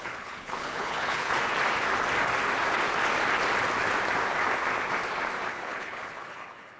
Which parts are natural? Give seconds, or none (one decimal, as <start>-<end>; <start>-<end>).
1.4-5.5

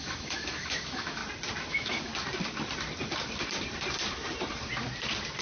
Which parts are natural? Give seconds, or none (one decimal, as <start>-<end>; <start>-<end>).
1.2-1.7; 2.1-5.4

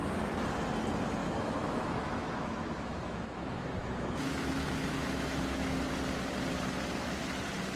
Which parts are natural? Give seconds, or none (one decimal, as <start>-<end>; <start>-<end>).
0.5-1.2; 5.9-7.8

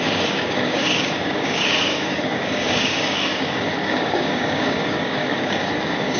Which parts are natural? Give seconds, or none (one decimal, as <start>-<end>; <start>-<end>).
none

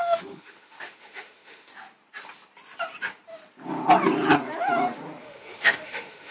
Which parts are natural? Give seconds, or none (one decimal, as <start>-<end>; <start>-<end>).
1.7-5.2

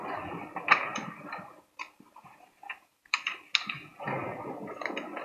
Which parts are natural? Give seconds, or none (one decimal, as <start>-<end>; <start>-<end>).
0.0-0.9; 3.4-5.2

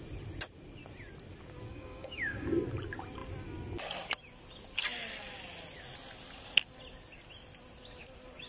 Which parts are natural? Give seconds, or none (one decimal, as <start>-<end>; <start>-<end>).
0.0-1.7; 2.5-8.5

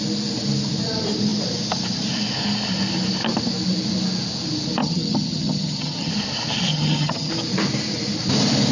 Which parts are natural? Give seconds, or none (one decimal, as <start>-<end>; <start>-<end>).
0.0-4.8; 6.1-6.7; 7.3-8.7